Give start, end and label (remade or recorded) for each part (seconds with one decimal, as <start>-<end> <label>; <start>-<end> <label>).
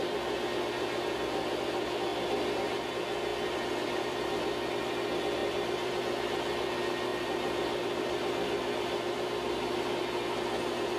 0.0-3.3 recorded; 3.3-4.3 remade; 4.3-5.4 recorded; 5.4-6.0 remade; 6.0-7.1 recorded; 7.1-10.0 remade; 10.0-11.0 recorded